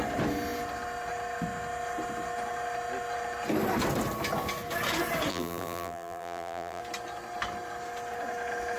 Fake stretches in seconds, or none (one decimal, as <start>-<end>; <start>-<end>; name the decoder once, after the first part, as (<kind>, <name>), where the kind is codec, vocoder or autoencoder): 5.3-6.8 (vocoder, BigVGAN v2)